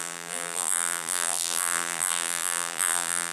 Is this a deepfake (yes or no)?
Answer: yes